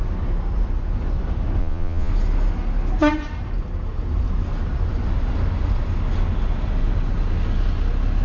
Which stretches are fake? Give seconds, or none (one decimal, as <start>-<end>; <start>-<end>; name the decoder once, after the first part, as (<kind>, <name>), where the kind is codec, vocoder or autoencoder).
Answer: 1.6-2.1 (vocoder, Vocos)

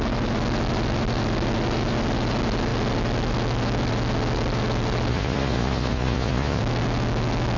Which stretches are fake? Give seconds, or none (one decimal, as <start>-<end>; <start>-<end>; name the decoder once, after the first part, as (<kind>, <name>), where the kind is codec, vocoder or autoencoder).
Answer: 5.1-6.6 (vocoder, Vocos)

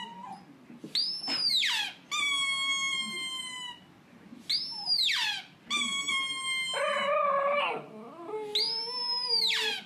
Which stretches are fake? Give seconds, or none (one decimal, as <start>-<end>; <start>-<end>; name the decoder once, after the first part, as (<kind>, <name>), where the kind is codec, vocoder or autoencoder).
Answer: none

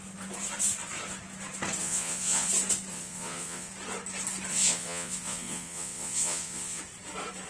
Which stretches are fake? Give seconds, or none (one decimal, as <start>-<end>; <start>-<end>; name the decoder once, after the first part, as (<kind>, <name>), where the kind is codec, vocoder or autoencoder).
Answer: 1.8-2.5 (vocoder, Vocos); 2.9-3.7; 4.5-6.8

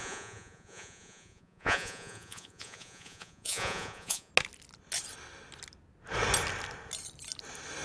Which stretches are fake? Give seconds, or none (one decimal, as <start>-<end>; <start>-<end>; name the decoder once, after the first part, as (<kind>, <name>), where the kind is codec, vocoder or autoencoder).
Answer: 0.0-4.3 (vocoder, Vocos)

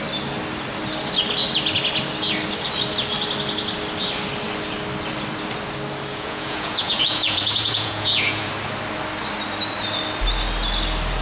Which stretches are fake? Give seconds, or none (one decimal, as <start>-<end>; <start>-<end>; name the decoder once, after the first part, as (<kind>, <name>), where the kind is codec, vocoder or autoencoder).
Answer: 6.1-8.5 (vocoder, Vocos)

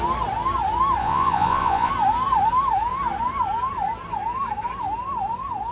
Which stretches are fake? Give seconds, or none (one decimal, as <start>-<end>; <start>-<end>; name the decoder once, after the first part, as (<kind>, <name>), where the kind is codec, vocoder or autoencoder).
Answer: 1.0-1.9 (vocoder, Vocos)

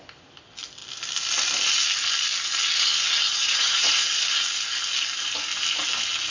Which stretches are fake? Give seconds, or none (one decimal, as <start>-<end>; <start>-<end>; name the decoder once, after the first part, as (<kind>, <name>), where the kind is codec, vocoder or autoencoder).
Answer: 3.4-4.1 (vocoder, Vocos)